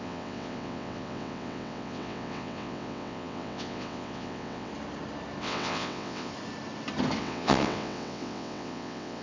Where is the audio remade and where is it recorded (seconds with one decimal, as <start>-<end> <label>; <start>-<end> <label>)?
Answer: 0.0-4.7 remade; 4.7-5.4 recorded; 5.4-6.3 remade; 6.3-7.2 recorded; 7.2-9.2 remade